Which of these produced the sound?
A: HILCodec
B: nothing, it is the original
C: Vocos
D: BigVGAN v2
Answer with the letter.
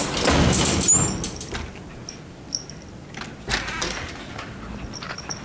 B